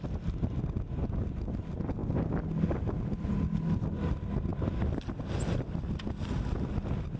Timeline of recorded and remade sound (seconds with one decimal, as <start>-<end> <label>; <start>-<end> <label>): 0.0-7.2 recorded